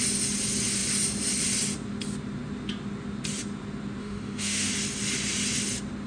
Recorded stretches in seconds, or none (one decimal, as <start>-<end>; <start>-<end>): 0.0-4.0; 4.7-6.1